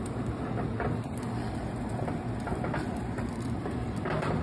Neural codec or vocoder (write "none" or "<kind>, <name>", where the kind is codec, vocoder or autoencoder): vocoder, BigVGAN v2